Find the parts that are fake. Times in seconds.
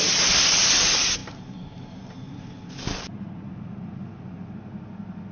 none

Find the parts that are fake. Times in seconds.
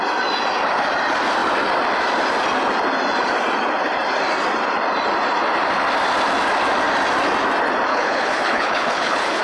7.9-9.4 (codec, HILCodec)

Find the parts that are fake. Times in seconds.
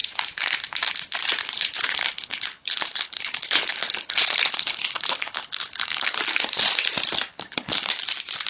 1.4-6.2 (codec, HILCodec); 7.3-7.9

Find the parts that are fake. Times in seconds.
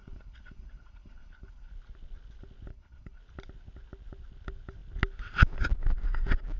0.0-1.7 (codec, HILCodec); 2.7-3.2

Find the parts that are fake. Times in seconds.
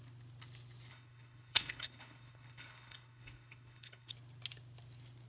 0.9-4.1 (codec, HILCodec)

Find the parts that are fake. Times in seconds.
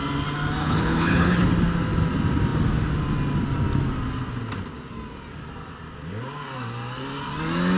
0.6-1.5 (codec, HILCodec)